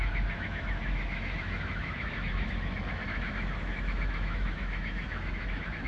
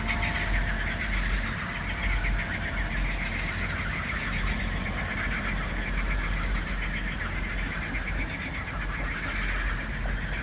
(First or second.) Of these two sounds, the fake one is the first